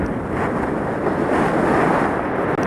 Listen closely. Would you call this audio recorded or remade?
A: recorded